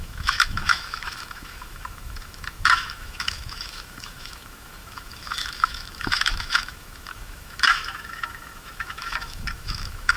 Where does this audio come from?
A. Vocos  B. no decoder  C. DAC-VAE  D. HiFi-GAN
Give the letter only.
C